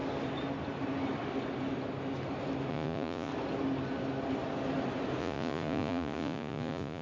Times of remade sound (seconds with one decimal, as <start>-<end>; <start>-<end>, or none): 2.7-3.3; 5.2-7.0